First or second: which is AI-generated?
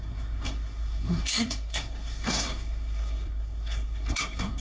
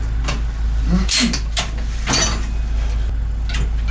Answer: first